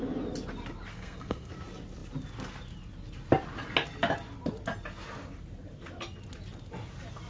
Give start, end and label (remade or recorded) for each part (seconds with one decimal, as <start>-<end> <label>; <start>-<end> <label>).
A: 0.0-0.9 recorded; 0.9-1.5 remade; 1.5-7.3 recorded